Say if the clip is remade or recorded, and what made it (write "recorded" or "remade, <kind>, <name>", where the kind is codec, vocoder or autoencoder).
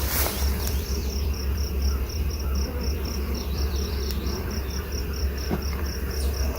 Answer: remade, vocoder, BigVGAN v2